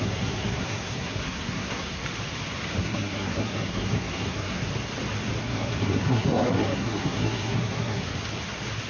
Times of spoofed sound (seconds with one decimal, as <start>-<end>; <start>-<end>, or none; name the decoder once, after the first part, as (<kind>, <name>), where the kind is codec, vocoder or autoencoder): 0.0-2.0 (codec, SNAC); 2.8-4.7; 5.4-8.1